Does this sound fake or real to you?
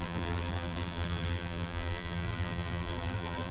fake